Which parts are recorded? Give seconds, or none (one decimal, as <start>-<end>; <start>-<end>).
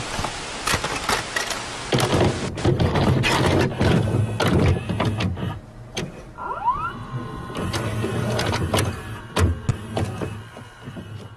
0.0-11.4